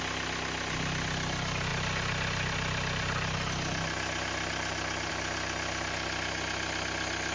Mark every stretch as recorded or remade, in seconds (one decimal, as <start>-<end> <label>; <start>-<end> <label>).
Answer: 0.0-7.3 recorded